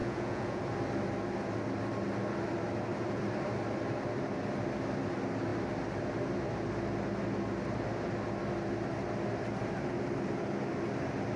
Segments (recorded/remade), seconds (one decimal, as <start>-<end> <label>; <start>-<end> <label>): 0.0-0.6 remade; 0.6-11.4 recorded